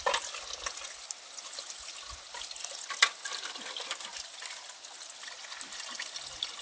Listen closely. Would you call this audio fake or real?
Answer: real